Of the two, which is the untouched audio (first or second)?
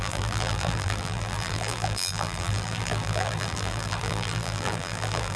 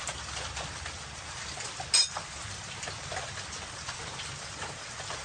second